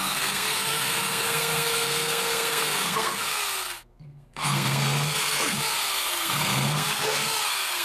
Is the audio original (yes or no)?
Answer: no